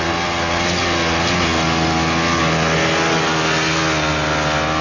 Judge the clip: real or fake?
real